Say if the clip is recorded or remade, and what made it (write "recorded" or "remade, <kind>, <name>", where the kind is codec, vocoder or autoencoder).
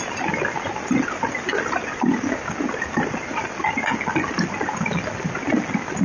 recorded